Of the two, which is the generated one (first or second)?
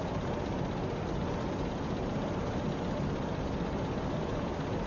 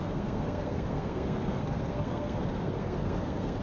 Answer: second